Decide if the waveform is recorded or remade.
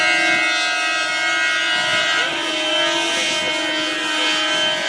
recorded